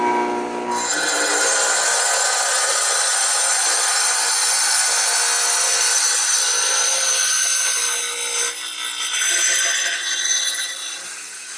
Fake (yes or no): no